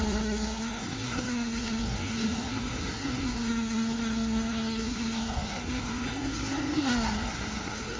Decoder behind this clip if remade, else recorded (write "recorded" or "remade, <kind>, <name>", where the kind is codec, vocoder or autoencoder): remade, codec, SNAC